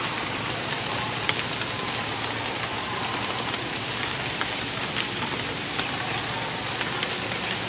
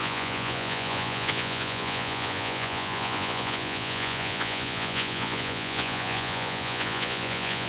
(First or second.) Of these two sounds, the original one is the first